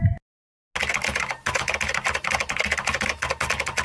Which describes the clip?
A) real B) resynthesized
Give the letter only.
A